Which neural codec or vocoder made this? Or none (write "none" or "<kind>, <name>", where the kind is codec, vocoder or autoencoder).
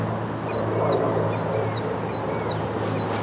none